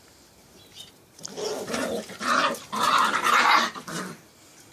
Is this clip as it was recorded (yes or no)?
yes